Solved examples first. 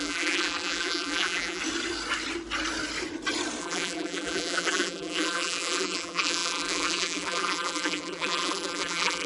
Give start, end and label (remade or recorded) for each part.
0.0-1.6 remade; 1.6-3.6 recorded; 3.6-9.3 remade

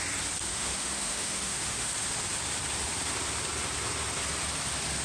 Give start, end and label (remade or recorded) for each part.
0.0-0.5 recorded; 0.5-1.9 remade; 1.9-5.0 recorded

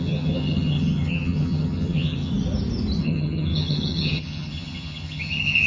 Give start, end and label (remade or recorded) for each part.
0.0-2.3 remade; 2.3-3.0 recorded; 3.0-5.7 remade

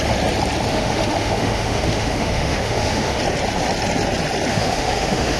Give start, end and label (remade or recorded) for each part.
0.0-0.7 recorded; 0.7-3.2 remade; 3.2-4.5 recorded; 4.5-5.4 remade

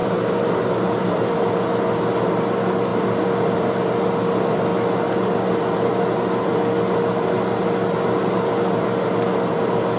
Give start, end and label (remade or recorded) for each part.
0.0-1.5 remade; 1.5-2.9 recorded; 2.9-3.7 remade; 3.7-10.0 recorded

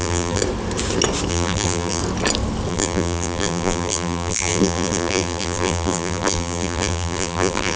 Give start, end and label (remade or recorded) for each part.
0.0-0.4 remade; 0.4-1.3 recorded; 1.3-2.0 remade; 2.0-2.7 recorded; 2.7-7.8 remade

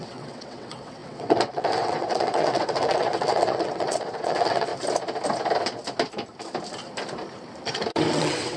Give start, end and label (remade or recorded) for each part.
0.0-4.7 remade; 4.7-7.9 recorded; 7.9-8.6 remade

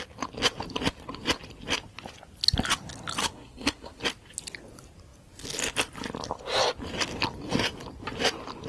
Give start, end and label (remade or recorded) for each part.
0.0-3.2 recorded; 3.2-4.0 remade; 4.0-8.7 recorded